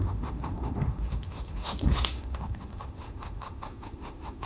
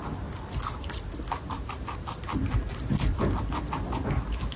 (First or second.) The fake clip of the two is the first